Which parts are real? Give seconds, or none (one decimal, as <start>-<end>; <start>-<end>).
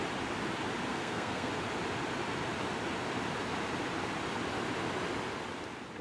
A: 0.0-0.9; 1.5-6.0